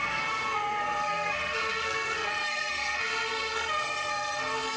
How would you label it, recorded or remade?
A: remade